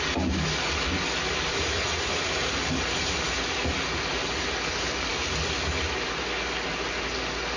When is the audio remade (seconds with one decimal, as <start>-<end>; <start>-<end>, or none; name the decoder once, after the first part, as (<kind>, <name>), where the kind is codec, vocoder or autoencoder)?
1.5-2.5 (vocoder, Vocos)